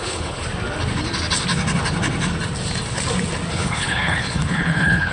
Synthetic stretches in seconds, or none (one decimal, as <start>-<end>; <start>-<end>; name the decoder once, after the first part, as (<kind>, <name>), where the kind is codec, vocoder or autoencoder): 0.0-0.4 (codec, HILCodec); 3.5-5.1